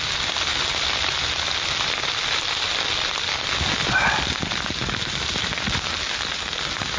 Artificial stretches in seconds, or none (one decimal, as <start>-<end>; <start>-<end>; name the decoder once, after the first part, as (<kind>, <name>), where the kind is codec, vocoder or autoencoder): none